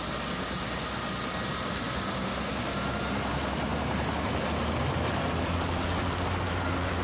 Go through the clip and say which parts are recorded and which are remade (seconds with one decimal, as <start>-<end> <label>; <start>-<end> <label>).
0.0-7.0 recorded

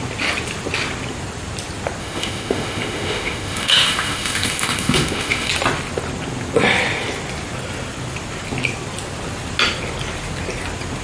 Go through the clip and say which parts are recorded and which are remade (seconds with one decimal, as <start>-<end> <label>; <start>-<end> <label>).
0.0-2.0 recorded; 2.0-5.5 remade; 5.5-11.0 recorded

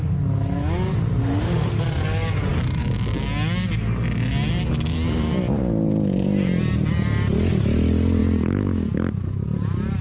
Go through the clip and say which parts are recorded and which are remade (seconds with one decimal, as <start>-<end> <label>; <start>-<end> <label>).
0.0-1.2 recorded; 1.2-1.8 remade; 1.8-10.0 recorded